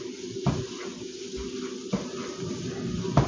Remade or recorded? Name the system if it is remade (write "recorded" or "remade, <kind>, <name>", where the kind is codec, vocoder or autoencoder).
recorded